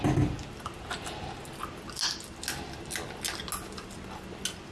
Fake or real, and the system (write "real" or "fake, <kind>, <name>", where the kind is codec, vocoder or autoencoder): real